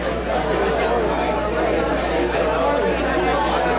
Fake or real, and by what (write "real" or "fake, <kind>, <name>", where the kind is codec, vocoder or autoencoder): real